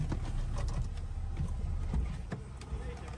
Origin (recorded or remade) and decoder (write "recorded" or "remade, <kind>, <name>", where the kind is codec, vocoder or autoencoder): recorded